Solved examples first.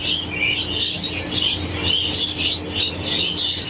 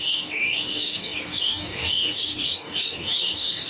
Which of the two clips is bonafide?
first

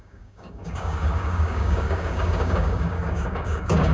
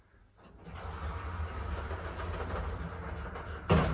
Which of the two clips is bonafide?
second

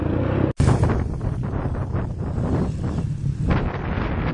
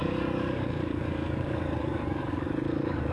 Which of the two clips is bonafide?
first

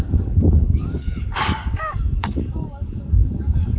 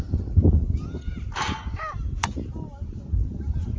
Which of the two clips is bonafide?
second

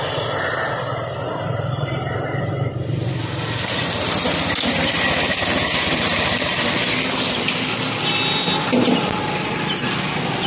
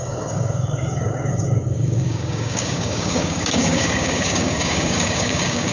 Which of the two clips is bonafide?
first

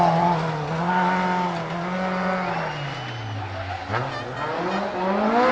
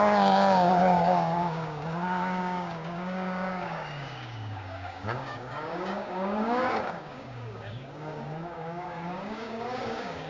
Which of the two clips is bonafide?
first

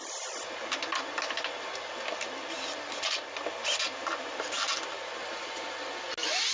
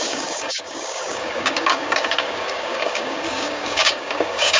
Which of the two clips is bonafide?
first